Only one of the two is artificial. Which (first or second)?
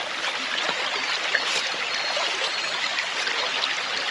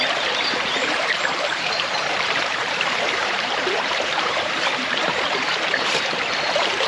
second